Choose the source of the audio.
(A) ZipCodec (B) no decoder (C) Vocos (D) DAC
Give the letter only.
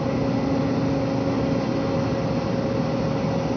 B